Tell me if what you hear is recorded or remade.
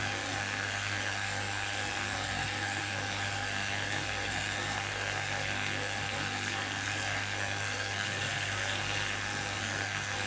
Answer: remade